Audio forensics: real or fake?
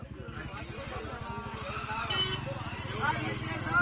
real